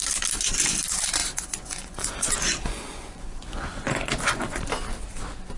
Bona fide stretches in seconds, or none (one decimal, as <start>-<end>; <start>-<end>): 0.0-1.2; 4.6-5.6